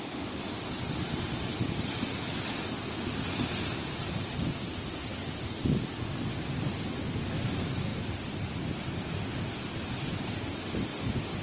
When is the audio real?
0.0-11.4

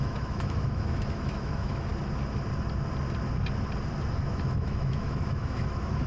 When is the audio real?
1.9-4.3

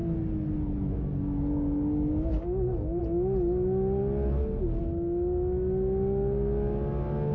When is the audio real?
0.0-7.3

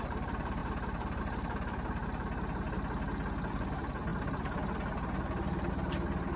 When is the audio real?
2.0-3.5